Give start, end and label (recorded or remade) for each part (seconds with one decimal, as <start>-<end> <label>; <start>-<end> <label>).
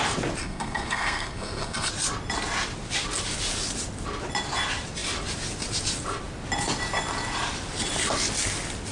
0.0-0.4 recorded; 0.4-1.9 remade; 1.9-8.9 recorded